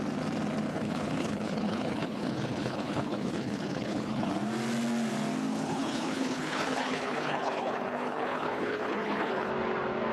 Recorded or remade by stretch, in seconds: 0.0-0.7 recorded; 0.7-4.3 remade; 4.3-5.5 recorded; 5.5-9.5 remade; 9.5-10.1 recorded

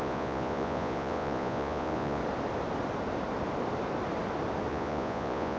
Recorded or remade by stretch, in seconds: 0.0-2.2 remade; 2.2-4.7 recorded; 4.7-5.6 remade

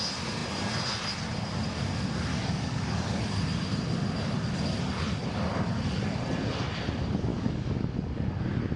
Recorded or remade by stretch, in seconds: 0.0-2.3 recorded; 2.3-3.2 remade; 3.2-7.3 recorded; 7.3-8.3 remade; 8.3-8.8 recorded

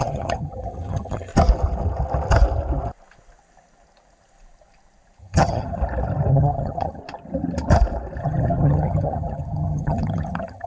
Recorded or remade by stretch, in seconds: 0.0-1.3 remade; 1.3-5.2 recorded; 5.2-5.8 remade; 5.8-6.3 recorded; 6.3-7.0 remade; 7.0-8.2 recorded; 8.2-10.7 remade

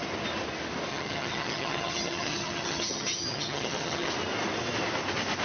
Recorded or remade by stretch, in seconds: 0.0-0.9 recorded; 0.9-4.1 remade; 4.1-5.4 recorded

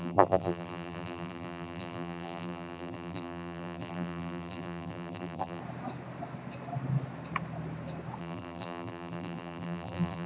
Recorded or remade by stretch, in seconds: 0.0-5.6 remade; 5.6-8.2 recorded; 8.2-10.3 remade